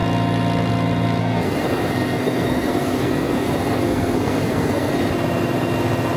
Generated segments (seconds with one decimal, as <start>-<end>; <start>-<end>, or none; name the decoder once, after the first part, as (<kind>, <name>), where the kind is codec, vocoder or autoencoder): 1.2-4.9 (codec, SNAC)